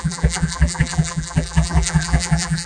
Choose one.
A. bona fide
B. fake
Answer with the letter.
B